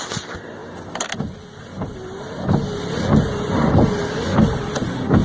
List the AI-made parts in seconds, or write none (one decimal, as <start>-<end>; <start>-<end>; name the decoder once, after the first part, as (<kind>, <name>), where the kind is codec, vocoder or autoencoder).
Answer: none